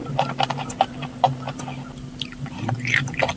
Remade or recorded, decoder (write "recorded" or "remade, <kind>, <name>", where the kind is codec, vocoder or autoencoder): recorded